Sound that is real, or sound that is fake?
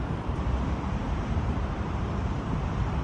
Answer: fake